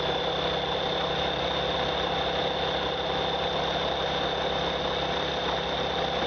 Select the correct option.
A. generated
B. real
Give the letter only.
B